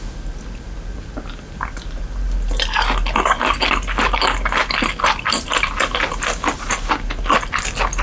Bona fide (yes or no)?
yes